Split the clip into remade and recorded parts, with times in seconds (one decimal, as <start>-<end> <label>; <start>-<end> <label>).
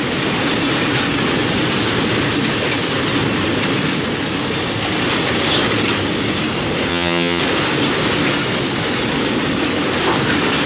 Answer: 0.0-6.9 recorded; 6.9-7.4 remade; 7.4-10.7 recorded